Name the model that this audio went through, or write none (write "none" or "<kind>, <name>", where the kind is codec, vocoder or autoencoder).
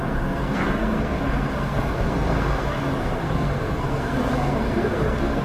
codec, SNAC